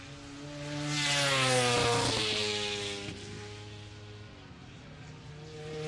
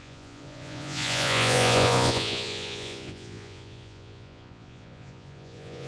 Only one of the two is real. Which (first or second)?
first